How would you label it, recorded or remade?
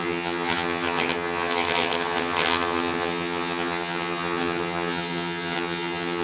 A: remade